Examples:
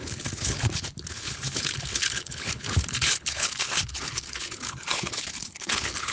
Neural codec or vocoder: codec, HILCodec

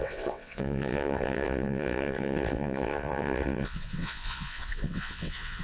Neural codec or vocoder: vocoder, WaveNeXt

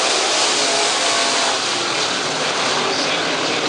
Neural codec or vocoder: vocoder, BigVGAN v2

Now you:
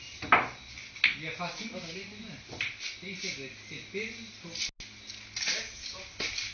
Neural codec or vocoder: none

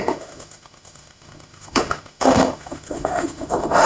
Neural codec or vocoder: autoencoder, DAC-VAE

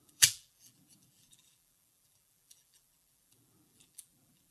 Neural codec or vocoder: vocoder, BigVGAN v2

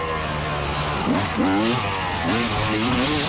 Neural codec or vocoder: none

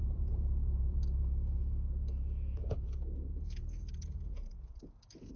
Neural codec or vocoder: vocoder, Vocos